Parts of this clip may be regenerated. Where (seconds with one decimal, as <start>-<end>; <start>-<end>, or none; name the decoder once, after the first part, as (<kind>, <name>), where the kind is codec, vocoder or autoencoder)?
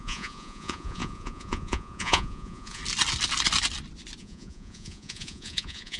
0.0-2.8 (vocoder, Vocos); 4.2-6.0